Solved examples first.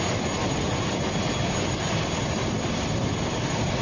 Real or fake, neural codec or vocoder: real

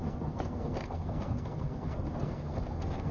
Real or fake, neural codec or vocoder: fake, codec, SNAC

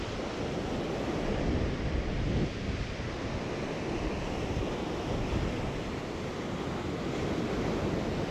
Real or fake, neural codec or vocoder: real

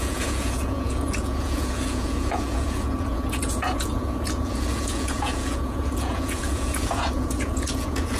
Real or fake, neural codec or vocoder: fake, vocoder, Vocos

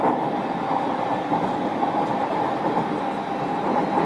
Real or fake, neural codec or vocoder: fake, vocoder, BigVGAN v2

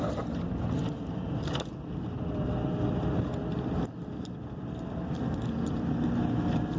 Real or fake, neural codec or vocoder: real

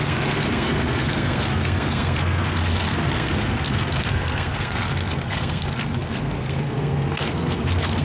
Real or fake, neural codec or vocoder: fake, codec, SNAC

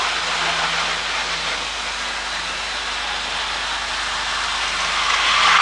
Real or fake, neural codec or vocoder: real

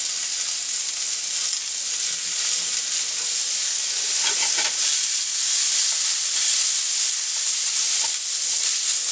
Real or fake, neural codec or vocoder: real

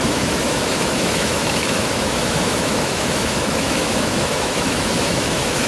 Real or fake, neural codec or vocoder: fake, autoencoder, DAC-VAE